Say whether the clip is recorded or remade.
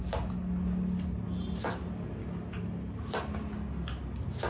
recorded